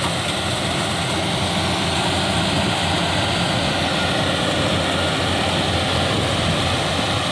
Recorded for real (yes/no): yes